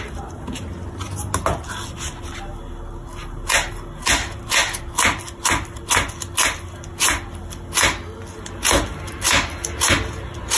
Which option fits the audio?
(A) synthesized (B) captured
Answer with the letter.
B